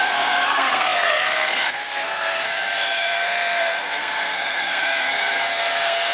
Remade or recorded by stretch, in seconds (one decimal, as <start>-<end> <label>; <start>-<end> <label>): 0.0-6.1 remade